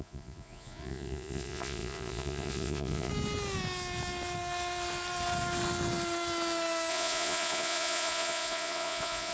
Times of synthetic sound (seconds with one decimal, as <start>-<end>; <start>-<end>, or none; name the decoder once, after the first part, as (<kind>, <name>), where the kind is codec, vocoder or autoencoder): 0.0-3.1 (vocoder, Vocos); 6.9-9.3